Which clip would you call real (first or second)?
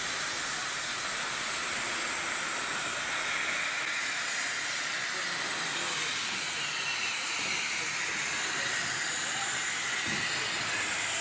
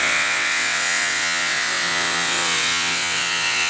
first